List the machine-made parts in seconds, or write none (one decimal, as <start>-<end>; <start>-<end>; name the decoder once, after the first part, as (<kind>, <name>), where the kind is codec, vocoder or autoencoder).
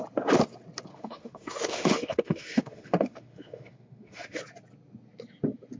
0.9-4.4 (autoencoder, DAC-VAE)